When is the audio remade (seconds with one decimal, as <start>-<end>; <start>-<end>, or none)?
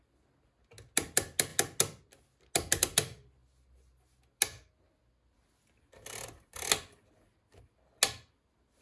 none